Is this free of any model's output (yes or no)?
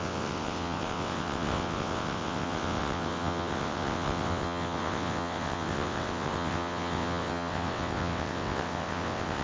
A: no